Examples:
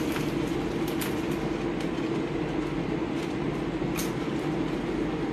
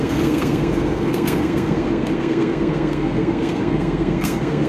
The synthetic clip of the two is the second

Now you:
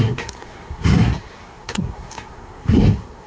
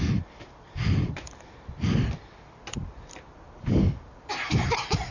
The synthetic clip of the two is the first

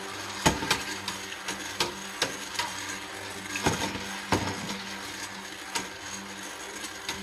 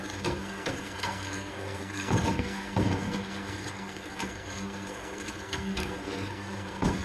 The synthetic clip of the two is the second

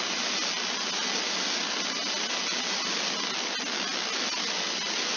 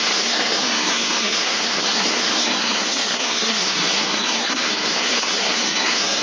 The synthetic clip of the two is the second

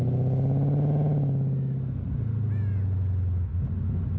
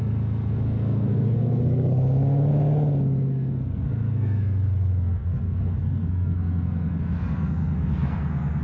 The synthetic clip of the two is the second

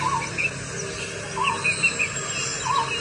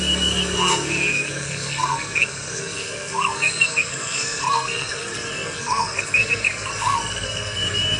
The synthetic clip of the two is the second